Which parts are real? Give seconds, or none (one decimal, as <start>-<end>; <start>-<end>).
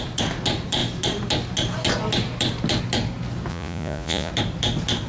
0.0-3.5; 4.3-5.1